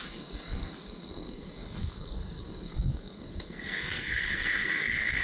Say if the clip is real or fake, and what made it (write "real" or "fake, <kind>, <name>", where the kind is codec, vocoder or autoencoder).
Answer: fake, codec, SNAC